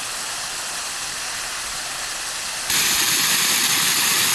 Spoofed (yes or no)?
no